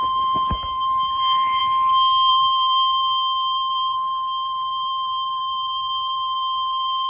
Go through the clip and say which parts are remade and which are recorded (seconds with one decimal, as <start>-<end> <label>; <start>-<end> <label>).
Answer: 0.0-1.6 remade; 1.6-2.3 recorded; 2.3-7.1 remade